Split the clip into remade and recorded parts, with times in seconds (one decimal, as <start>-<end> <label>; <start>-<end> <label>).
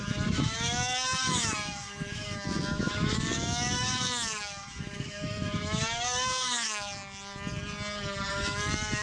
0.0-7.0 remade; 7.0-8.3 recorded; 8.3-9.0 remade